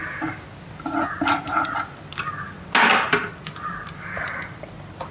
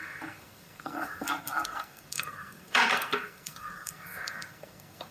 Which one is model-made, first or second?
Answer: second